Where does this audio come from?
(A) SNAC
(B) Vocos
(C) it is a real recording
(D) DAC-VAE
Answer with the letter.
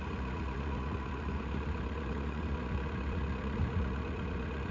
B